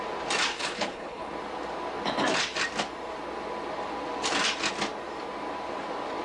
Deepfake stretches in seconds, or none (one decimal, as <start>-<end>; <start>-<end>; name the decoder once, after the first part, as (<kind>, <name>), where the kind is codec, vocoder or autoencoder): 0.5-1.3 (codec, HILCodec)